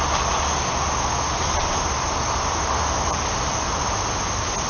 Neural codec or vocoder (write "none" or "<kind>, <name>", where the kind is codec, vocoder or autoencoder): none